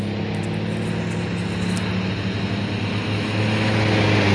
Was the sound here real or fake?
real